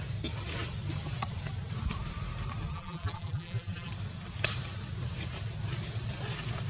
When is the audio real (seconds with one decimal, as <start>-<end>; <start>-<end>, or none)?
0.0-2.7; 3.9-6.7